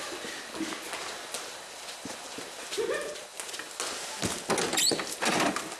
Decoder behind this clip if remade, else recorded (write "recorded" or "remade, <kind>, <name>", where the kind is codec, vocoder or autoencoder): recorded